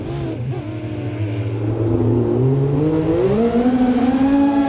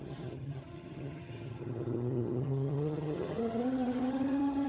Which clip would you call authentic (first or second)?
first